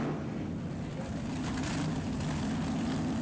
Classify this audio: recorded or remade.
recorded